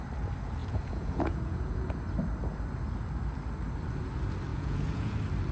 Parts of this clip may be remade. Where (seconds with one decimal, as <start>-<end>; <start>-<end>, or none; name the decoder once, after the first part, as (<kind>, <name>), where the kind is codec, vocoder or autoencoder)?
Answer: 0.6-1.9 (vocoder, Vocos); 4.5-5.1